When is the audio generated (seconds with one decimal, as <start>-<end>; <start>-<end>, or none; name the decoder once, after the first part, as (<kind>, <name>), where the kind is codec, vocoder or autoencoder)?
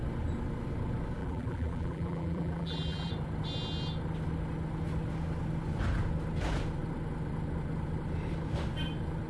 1.2-3.1 (vocoder, BigVGAN v2)